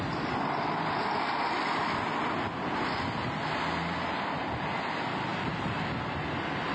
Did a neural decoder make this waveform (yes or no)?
no